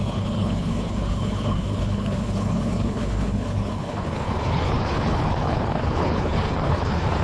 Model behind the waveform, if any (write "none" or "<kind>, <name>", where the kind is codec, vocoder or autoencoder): codec, HILCodec